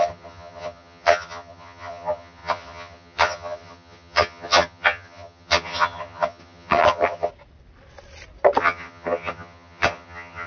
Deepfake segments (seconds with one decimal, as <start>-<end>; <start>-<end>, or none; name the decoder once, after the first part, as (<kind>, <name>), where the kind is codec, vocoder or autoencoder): 0.0-7.3 (vocoder, HiFi-GAN); 8.6-10.5